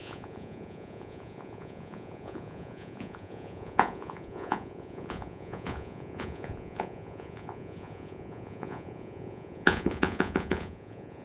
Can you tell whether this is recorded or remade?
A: remade